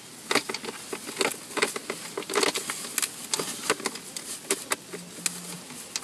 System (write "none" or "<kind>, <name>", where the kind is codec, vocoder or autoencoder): none